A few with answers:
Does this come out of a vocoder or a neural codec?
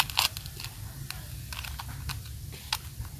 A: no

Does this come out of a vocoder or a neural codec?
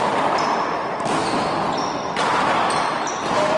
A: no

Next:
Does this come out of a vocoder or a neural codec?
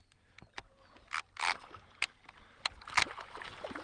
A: no